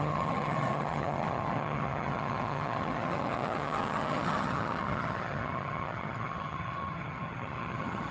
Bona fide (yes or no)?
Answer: no